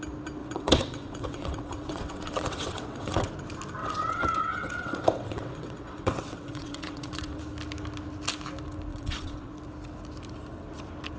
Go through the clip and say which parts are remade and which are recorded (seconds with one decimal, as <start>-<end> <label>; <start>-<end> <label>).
0.0-0.4 recorded; 0.4-3.3 remade; 3.3-3.8 recorded; 3.8-7.4 remade; 7.4-8.9 recorded; 8.9-9.5 remade; 9.5-11.2 recorded